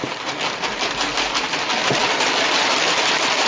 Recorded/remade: recorded